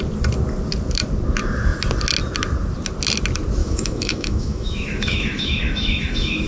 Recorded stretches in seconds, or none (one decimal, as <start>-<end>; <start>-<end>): 0.0-3.6